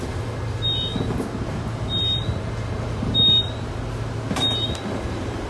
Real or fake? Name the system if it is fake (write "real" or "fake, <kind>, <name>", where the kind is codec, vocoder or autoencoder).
real